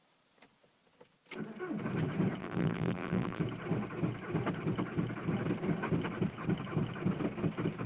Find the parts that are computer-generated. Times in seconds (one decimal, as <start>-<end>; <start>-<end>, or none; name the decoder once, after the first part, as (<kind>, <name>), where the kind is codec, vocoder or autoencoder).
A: 2.4-3.4 (vocoder, BigVGAN v2)